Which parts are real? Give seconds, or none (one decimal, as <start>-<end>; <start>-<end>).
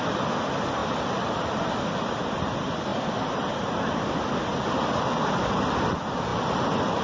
0.0-0.8; 1.6-2.9; 4.7-6.3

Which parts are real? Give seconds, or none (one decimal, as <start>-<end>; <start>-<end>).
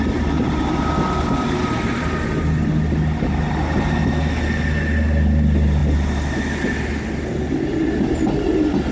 0.0-8.9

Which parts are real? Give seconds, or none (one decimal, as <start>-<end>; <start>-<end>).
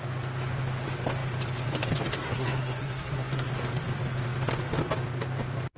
0.0-2.2; 3.5-5.8